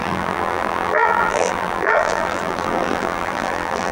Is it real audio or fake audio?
fake